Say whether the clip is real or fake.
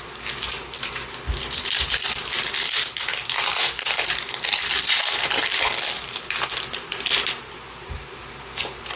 real